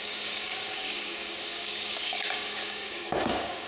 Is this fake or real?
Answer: fake